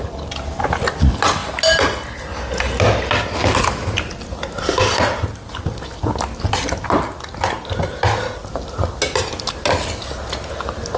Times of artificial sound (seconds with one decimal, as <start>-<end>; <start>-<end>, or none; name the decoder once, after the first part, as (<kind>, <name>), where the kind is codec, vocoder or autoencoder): none